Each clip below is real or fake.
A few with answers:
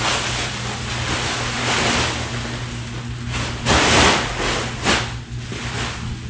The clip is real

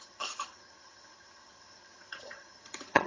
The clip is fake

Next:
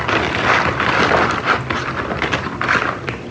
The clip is real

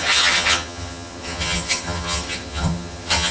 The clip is fake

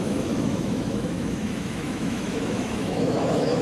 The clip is fake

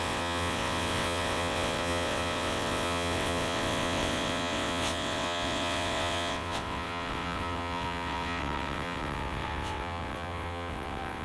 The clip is fake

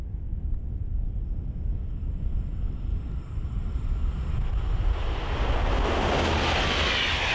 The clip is real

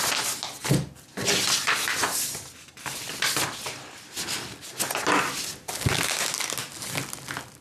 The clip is real